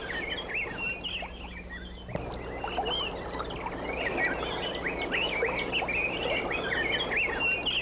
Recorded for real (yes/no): yes